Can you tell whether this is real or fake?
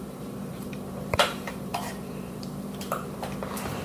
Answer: fake